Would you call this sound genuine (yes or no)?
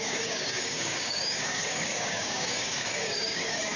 no